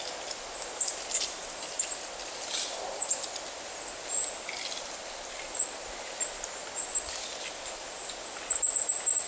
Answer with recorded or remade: recorded